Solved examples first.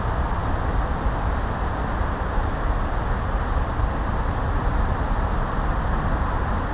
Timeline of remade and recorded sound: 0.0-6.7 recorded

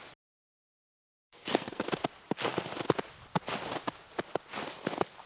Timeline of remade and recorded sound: 0.0-1.2 recorded; 1.2-1.9 remade; 1.9-5.3 recorded

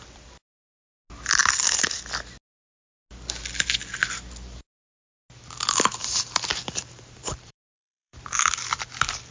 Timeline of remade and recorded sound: 0.0-6.0 recorded; 6.0-8.5 remade; 8.5-9.3 recorded